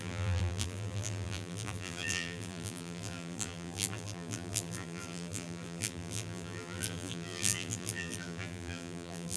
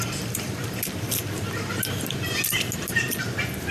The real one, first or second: second